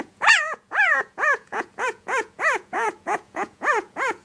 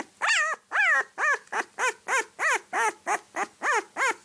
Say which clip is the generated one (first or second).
first